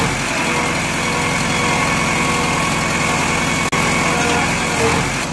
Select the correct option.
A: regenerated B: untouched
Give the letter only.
B